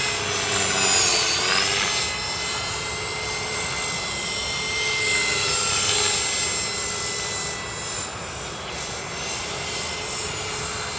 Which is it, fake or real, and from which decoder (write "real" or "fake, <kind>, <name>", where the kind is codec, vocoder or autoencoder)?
real